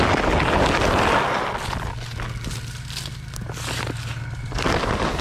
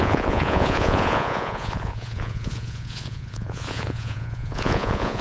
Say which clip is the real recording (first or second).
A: first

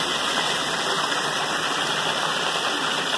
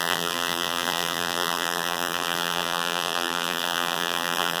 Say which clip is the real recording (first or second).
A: first